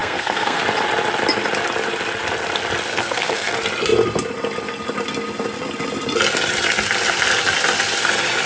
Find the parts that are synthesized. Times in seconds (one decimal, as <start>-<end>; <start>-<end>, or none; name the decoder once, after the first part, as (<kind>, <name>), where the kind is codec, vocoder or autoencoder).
0.0-0.6 (codec, SNAC); 2.9-3.5